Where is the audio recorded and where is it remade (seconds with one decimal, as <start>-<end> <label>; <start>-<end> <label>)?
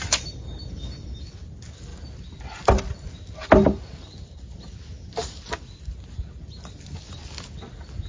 0.0-8.1 recorded